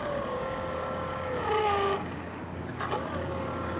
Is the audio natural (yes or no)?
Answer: no